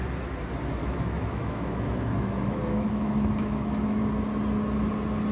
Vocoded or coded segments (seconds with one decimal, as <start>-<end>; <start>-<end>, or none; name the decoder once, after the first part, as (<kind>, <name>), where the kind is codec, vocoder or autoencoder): 0.8-4.0 (autoencoder, DAC-VAE)